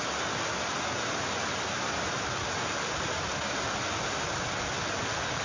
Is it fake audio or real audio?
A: real